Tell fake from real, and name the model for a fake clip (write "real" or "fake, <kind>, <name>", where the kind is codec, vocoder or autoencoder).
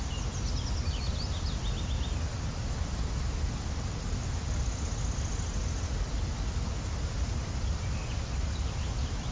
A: real